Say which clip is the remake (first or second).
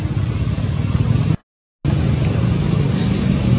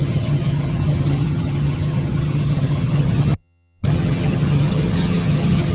second